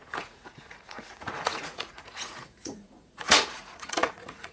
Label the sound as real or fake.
fake